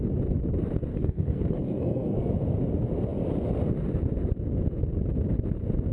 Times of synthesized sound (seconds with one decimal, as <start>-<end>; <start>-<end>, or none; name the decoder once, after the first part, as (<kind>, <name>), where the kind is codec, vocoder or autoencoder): 0.9-2.3 (codec, SNAC)